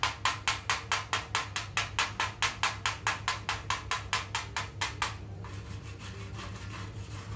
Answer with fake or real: real